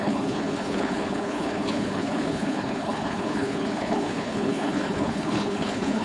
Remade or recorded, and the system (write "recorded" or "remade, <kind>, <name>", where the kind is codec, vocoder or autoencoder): remade, codec, HILCodec